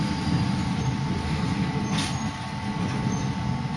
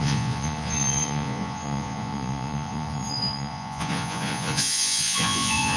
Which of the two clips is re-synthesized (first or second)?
second